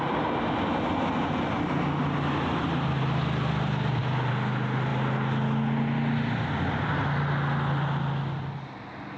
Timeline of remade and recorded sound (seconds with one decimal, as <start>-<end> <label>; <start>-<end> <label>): 0.0-9.2 recorded